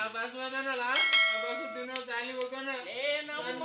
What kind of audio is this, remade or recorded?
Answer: recorded